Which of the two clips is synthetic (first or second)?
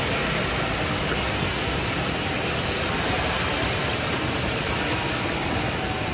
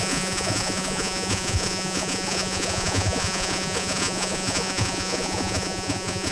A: second